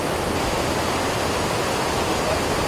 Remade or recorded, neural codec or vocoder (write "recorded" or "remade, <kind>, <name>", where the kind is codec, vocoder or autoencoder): recorded